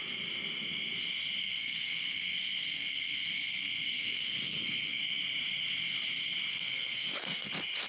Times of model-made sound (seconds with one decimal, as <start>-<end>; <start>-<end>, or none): 1.4-5.0; 6.5-7.5